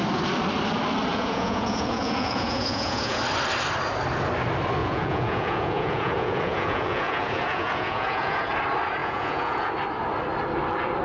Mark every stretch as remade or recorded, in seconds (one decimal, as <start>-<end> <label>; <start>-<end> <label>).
0.0-1.1 recorded; 1.1-3.2 remade; 3.2-4.8 recorded; 4.8-8.5 remade; 8.5-9.0 recorded; 9.0-9.7 remade; 9.7-11.0 recorded